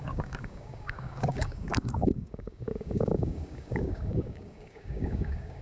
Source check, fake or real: fake